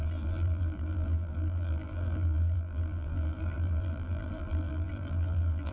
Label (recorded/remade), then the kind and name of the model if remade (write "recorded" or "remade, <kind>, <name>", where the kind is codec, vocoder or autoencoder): remade, vocoder, BigVGAN v2